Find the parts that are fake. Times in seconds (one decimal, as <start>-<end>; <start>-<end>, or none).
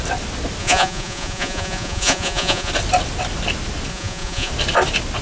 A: 0.6-2.7; 3.9-4.5